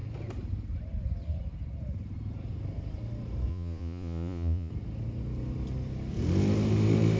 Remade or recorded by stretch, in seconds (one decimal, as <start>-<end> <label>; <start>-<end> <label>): 0.0-3.5 recorded; 3.5-4.7 remade; 4.7-7.2 recorded